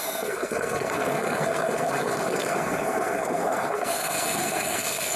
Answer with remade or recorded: remade